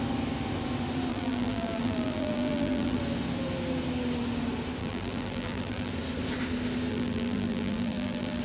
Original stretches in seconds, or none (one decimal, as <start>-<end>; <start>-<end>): 0.0-1.1; 3.0-4.8; 5.9-6.9